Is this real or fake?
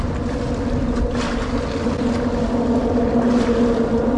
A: real